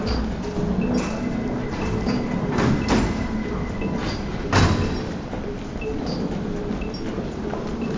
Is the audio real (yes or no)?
yes